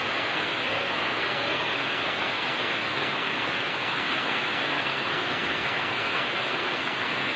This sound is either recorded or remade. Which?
remade